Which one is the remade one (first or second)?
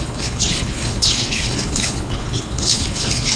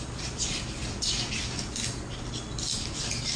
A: first